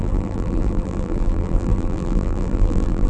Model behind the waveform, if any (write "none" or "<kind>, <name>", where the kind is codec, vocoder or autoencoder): vocoder, BigVGAN v2